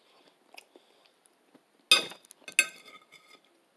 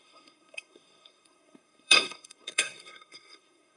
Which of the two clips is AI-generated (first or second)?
second